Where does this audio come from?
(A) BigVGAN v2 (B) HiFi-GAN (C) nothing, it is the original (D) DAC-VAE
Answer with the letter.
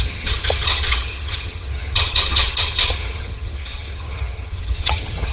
B